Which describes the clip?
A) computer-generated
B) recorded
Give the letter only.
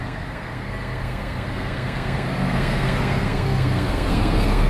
A